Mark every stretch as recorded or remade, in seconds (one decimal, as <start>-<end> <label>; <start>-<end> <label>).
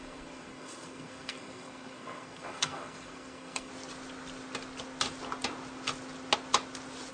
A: 0.0-3.7 remade; 3.7-7.1 recorded